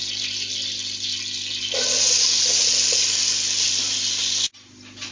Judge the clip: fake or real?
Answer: real